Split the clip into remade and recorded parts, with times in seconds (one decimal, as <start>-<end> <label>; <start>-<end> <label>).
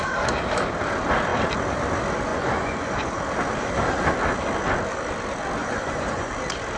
0.0-2.3 recorded; 2.3-3.1 remade; 3.1-5.6 recorded; 5.6-6.3 remade; 6.3-6.8 recorded